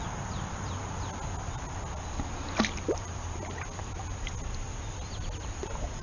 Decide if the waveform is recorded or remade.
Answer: recorded